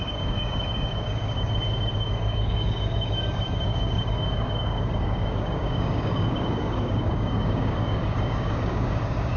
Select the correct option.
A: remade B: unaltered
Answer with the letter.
A